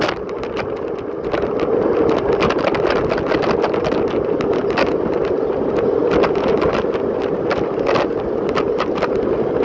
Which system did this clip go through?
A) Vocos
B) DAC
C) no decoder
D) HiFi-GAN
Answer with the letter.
C